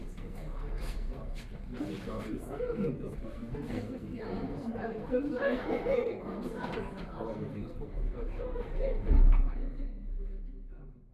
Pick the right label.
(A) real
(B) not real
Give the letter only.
B